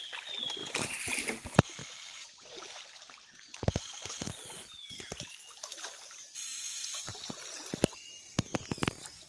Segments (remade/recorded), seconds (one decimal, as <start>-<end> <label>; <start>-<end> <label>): 0.0-0.6 recorded; 0.6-1.3 remade; 1.3-1.8 recorded; 1.8-4.3 remade; 4.3-9.3 recorded